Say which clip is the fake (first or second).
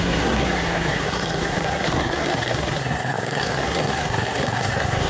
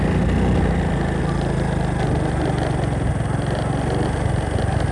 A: first